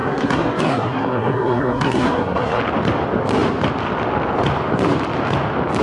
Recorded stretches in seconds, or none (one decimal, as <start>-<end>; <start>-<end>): 2.6-5.8